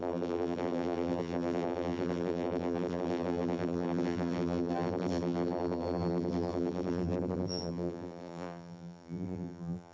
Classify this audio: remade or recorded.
remade